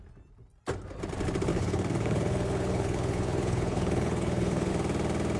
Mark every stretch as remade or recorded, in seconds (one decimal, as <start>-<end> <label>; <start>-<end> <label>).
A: 0.0-1.5 recorded; 1.5-4.7 remade; 4.7-5.4 recorded